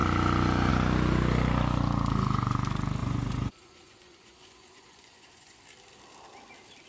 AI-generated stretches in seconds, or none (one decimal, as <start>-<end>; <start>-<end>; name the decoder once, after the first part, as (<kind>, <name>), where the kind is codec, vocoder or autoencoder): 3.0-5.6 (vocoder, Vocos)